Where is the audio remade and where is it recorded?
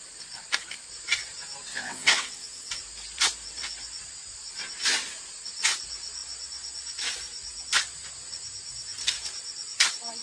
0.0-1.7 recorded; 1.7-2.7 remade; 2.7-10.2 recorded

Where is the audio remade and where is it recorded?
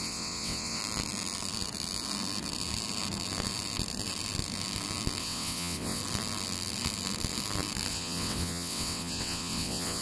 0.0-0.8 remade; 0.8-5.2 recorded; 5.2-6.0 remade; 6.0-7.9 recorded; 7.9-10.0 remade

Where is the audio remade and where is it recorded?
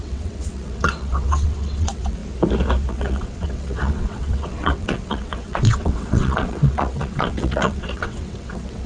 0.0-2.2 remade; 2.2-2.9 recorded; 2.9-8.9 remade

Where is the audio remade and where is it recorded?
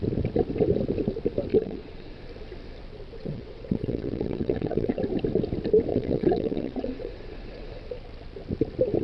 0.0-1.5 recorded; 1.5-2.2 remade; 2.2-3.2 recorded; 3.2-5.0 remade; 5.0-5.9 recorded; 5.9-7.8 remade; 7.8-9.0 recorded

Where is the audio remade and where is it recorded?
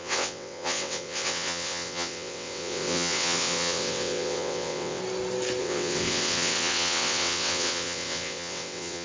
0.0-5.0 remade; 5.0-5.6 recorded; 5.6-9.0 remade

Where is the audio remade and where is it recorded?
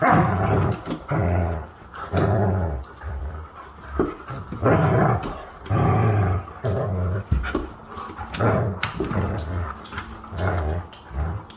0.0-11.6 recorded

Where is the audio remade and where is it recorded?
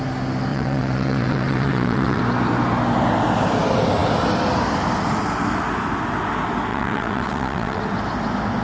0.0-0.5 recorded; 0.5-2.2 remade; 2.2-6.7 recorded; 6.7-7.8 remade; 7.8-8.6 recorded